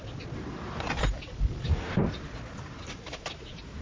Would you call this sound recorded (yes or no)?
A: yes